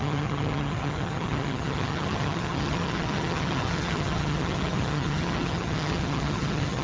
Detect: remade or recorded remade